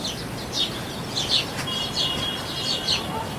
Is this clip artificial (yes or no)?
no